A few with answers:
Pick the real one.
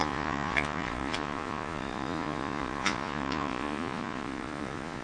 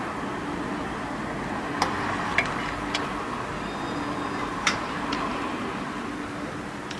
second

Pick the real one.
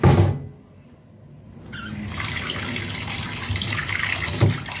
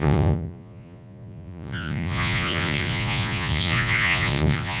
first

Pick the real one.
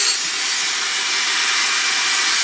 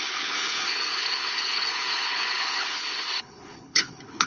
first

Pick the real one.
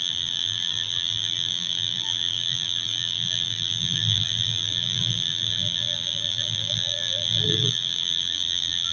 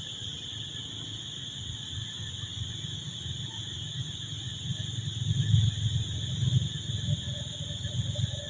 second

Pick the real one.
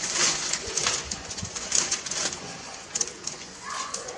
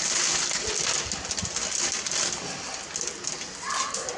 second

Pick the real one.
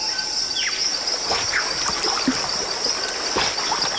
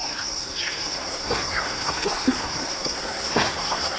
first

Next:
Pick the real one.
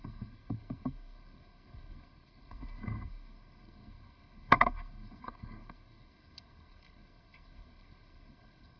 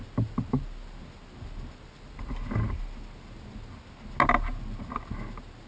second